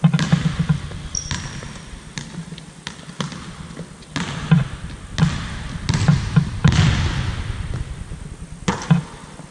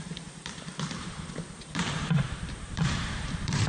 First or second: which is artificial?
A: second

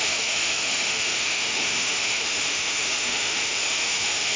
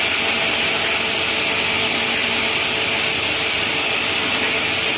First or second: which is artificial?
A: first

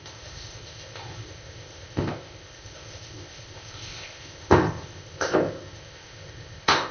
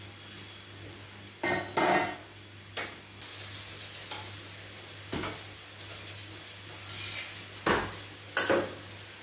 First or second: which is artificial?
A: first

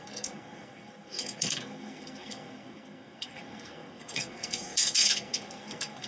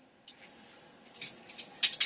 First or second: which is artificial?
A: first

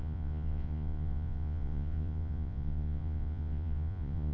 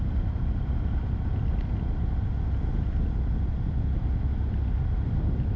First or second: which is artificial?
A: first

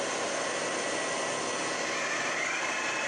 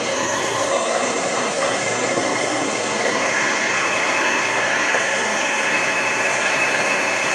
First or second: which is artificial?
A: second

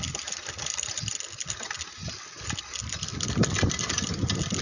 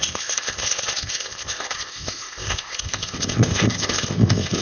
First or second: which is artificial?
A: second